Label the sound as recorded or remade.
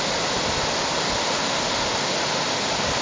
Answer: recorded